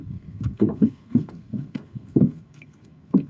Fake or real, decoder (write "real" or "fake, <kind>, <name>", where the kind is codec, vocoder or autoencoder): fake, codec, SNAC